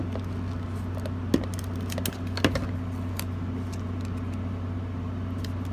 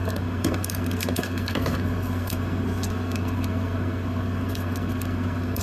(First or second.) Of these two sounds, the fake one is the second